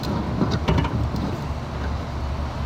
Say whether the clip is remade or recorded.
recorded